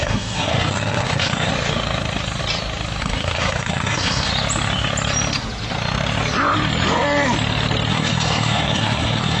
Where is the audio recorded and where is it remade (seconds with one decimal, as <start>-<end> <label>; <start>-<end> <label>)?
0.0-1.5 remade; 1.5-3.0 recorded; 3.0-4.3 remade; 4.3-7.9 recorded; 7.9-9.4 remade